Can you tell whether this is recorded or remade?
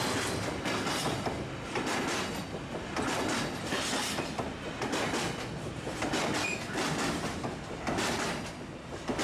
recorded